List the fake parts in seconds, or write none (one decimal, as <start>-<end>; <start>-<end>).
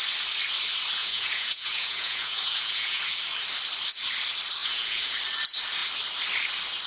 1.0-3.0; 4.6-5.2